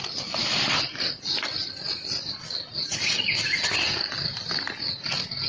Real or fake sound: real